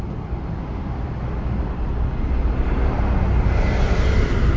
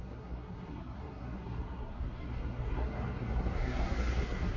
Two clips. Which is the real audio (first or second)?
first